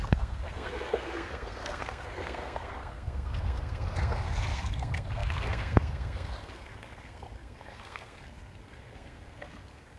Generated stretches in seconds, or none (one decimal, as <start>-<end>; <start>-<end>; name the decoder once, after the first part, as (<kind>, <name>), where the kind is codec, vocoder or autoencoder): 0.0-10.0 (codec, SNAC)